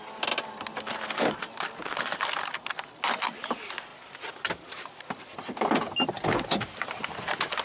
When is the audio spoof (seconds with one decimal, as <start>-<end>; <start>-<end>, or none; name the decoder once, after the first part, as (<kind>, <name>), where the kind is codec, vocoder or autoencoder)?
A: none